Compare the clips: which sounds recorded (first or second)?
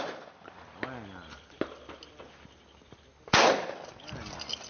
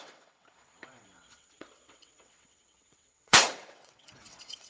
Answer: first